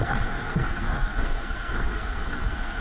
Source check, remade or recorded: remade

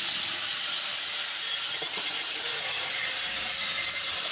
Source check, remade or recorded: remade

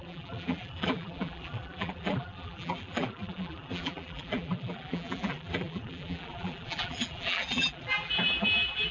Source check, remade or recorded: remade